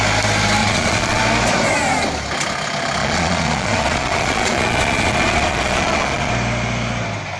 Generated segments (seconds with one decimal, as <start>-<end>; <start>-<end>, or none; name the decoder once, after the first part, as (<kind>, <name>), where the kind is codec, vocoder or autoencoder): 0.6-1.2 (vocoder, Vocos); 3.0-6.3